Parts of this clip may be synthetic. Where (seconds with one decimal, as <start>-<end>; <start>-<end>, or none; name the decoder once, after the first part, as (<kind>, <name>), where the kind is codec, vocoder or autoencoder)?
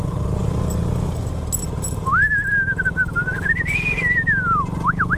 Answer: none